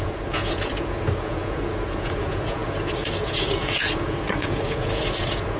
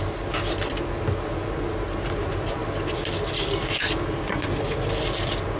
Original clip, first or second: second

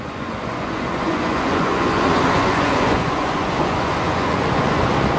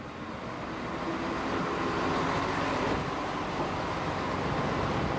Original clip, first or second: second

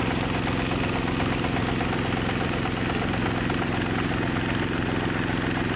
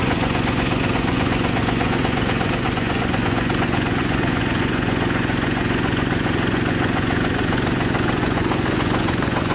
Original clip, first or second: first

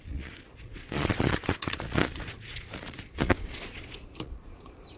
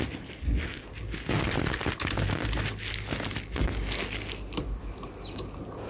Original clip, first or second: second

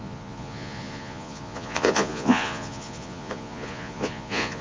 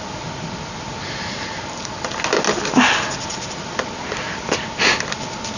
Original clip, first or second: second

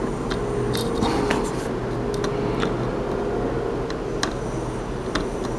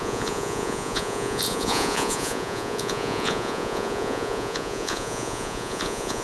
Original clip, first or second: first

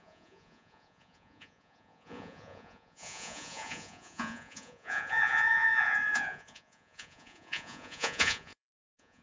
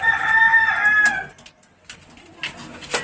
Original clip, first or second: second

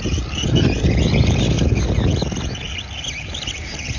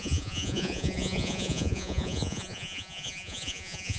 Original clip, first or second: first